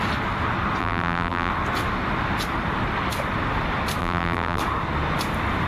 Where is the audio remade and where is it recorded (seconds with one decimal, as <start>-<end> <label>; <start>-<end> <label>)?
0.0-0.8 recorded; 0.8-1.5 remade; 1.5-4.0 recorded; 4.0-4.6 remade; 4.6-5.7 recorded

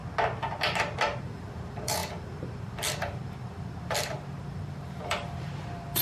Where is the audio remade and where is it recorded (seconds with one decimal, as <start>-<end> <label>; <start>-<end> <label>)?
0.0-1.2 recorded; 1.2-6.0 remade

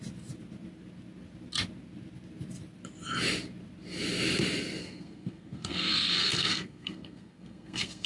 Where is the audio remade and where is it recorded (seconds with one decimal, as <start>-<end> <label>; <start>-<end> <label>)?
0.0-4.8 recorded; 4.8-8.1 remade

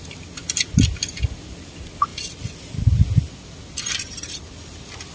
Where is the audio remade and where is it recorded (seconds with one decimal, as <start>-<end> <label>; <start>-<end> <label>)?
0.0-2.1 recorded; 2.1-5.1 remade

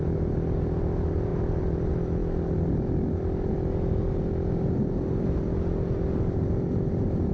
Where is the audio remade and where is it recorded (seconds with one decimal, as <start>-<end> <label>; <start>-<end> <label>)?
0.0-7.3 recorded

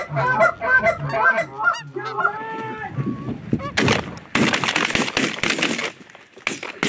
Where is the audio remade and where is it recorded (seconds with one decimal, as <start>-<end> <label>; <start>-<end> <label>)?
0.0-0.5 remade; 0.5-5.8 recorded; 5.8-6.4 remade; 6.4-6.9 recorded

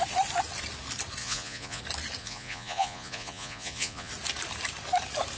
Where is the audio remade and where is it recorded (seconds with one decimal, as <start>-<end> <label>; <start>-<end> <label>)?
0.0-1.2 recorded; 1.2-1.8 remade; 1.8-2.2 recorded; 2.2-4.1 remade; 4.1-5.4 recorded

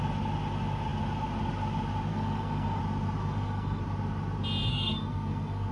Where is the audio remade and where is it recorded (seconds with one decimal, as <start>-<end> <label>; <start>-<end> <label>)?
0.0-2.1 recorded; 2.1-2.8 remade; 2.8-3.2 recorded; 3.2-3.8 remade; 3.8-4.7 recorded; 4.7-5.7 remade